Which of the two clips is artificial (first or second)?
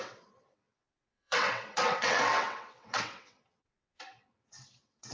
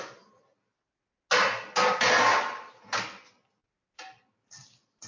first